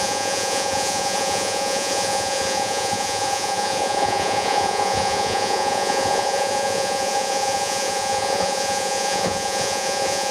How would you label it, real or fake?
fake